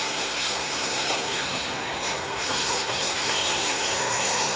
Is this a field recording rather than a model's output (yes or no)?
no